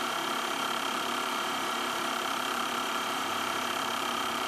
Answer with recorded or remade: remade